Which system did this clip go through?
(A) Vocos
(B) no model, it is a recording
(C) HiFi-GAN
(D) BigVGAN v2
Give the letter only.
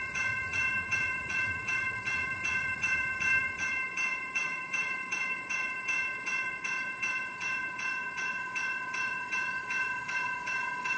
A